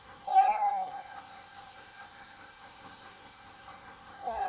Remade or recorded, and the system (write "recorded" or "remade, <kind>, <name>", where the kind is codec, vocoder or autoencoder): remade, codec, SNAC